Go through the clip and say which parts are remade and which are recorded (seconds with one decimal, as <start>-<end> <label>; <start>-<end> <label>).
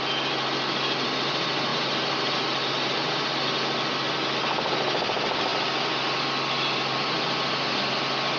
0.0-1.7 recorded; 1.7-2.7 remade; 2.7-8.4 recorded